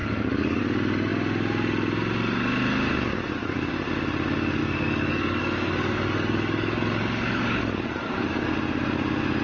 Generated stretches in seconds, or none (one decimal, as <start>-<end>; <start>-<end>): 0.0-0.6; 4.6-8.5